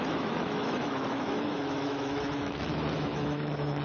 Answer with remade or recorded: remade